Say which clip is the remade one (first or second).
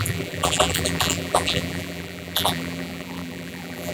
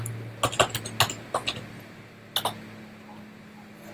first